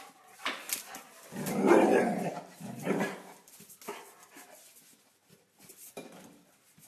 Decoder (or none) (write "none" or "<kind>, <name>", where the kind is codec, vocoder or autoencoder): none